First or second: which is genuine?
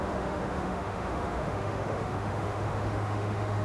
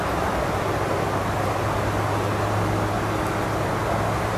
second